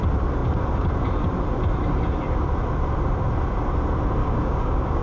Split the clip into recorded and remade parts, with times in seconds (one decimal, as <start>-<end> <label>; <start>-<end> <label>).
0.0-4.2 recorded; 4.2-5.0 remade

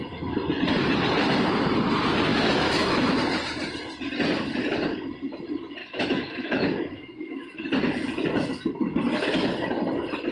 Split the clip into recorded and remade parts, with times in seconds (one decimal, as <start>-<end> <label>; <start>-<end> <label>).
0.0-2.3 recorded; 2.3-3.1 remade; 3.1-5.8 recorded; 5.8-7.6 remade; 7.6-10.3 recorded

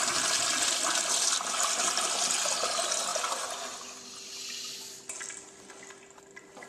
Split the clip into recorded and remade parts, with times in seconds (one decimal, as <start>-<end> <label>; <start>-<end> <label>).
0.0-6.7 recorded